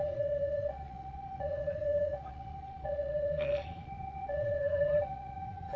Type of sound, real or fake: fake